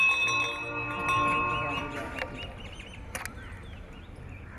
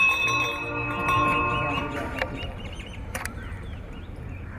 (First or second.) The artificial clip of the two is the second